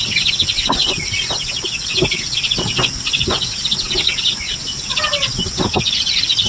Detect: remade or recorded recorded